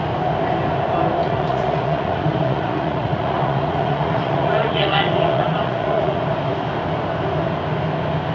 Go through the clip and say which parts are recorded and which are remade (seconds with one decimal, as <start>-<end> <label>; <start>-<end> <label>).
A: 0.0-1.2 recorded; 1.2-6.2 remade; 6.2-8.3 recorded